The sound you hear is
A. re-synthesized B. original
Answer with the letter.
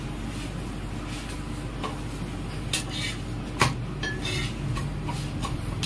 B